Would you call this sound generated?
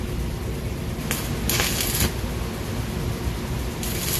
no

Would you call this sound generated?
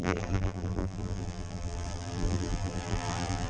yes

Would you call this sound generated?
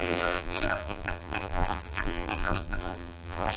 yes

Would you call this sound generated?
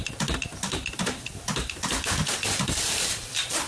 yes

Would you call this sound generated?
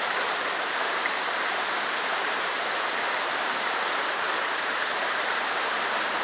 yes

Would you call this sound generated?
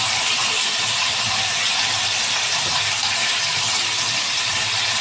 yes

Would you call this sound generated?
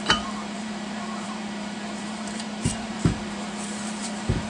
yes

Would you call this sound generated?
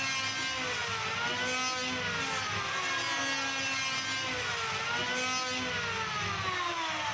no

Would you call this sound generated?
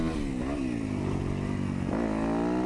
no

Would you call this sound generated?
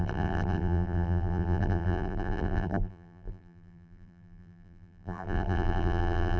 yes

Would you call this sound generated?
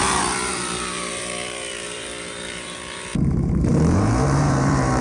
yes